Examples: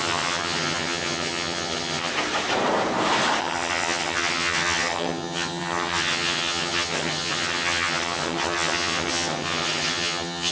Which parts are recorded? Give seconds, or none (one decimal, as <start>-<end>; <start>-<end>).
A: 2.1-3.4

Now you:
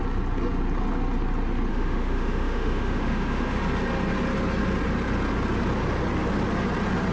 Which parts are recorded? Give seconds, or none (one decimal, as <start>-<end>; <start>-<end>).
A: 0.0-1.7; 3.6-7.1

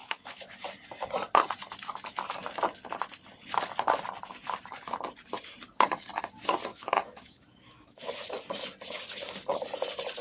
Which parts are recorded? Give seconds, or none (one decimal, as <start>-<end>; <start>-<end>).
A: 0.6-6.7; 8.1-10.2